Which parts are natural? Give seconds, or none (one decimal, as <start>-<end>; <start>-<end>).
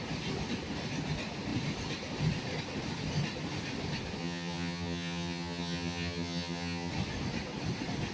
0.0-4.2; 6.9-8.1